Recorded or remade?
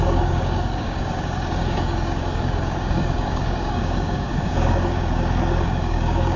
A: remade